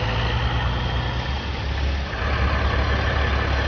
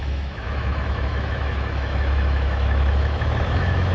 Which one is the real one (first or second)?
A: first